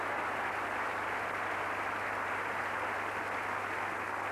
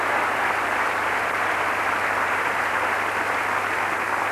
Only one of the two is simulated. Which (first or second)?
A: second